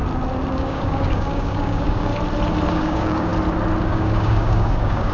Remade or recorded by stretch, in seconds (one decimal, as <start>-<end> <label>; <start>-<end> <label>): 0.0-0.5 recorded; 0.5-2.1 remade; 2.1-2.7 recorded; 2.7-3.3 remade; 3.3-3.8 recorded; 3.8-5.1 remade